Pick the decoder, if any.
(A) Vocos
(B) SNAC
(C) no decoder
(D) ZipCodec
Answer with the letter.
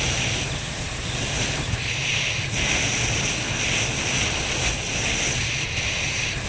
C